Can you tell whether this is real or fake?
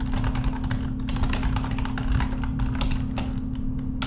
real